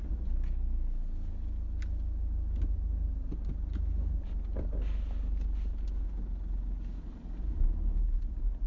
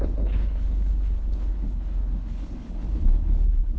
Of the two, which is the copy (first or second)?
second